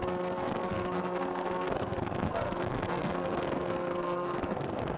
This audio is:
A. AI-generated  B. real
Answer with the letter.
A